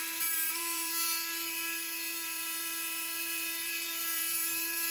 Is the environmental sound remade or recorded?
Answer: remade